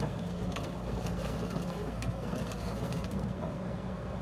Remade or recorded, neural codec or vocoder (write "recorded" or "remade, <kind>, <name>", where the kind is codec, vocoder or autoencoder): remade, codec, SNAC